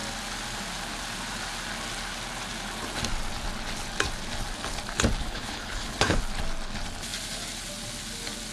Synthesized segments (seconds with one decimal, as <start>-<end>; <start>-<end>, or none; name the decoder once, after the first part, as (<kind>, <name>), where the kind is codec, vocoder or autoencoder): 5.2-6.2 (codec, HILCodec)